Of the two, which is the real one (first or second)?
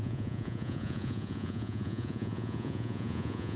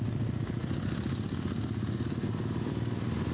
second